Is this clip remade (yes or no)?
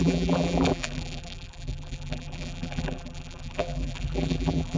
yes